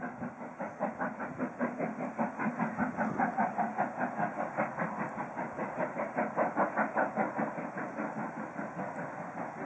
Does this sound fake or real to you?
real